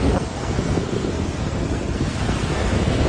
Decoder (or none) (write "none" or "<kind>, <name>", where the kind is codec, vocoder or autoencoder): codec, SNAC